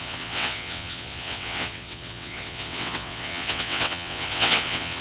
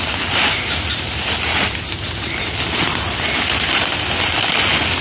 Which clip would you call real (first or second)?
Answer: second